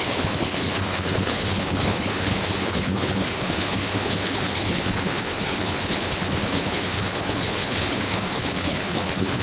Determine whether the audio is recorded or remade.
remade